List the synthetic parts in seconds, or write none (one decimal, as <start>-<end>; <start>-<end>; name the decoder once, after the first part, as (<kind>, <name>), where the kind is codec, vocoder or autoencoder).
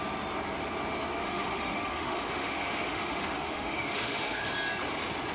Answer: 1.2-4.4 (autoencoder, DAC-VAE)